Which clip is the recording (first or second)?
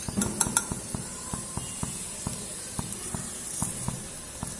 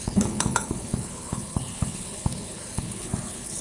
first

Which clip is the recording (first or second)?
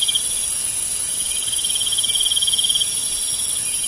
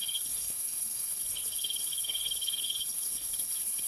first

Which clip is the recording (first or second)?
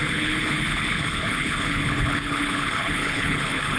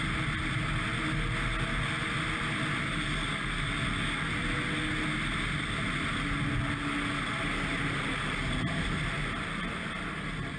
second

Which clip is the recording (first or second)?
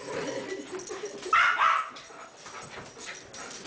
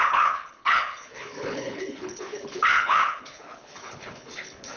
first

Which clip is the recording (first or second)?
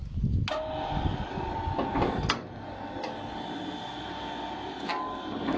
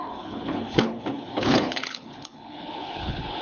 first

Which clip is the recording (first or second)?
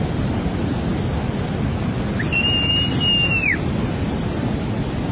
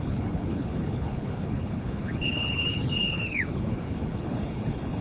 first